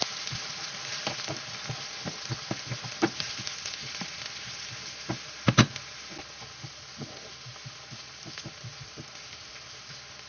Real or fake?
real